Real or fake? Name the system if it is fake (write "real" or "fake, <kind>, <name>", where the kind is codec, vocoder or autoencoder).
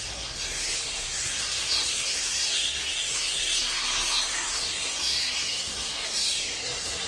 fake, codec, SNAC